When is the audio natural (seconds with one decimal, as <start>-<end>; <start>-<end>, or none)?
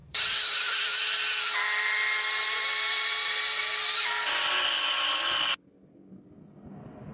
1.1-2.9; 3.6-7.1